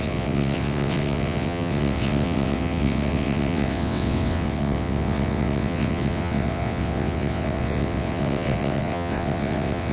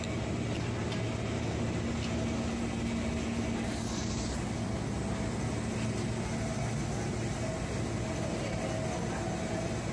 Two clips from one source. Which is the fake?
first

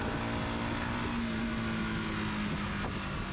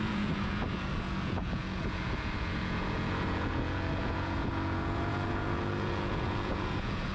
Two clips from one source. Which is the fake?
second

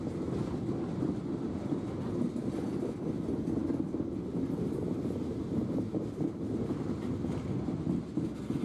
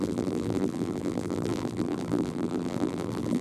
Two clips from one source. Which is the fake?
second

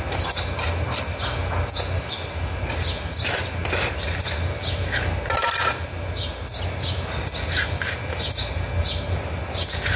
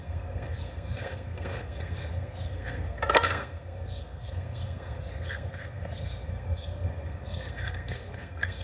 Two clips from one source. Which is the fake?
second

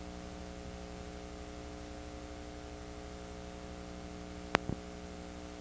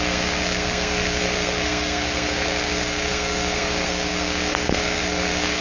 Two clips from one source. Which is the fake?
second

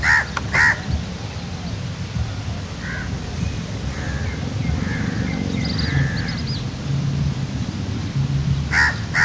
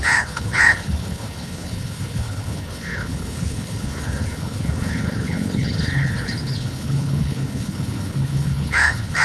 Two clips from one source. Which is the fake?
second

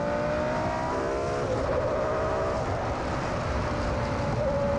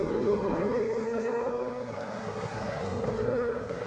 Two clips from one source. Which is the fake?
second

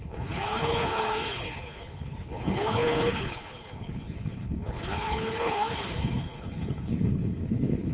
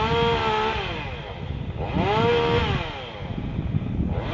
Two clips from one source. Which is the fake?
first